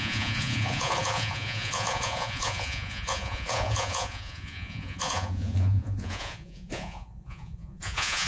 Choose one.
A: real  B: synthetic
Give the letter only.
B